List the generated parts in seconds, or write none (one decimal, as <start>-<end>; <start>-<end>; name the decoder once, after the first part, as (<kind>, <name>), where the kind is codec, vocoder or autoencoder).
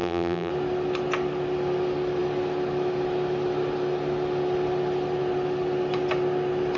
0.0-0.5 (vocoder, BigVGAN v2)